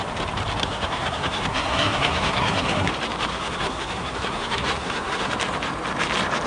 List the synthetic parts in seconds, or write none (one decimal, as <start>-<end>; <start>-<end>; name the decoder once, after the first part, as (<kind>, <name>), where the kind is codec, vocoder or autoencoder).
0.6-2.9 (codec, SNAC); 3.3-5.3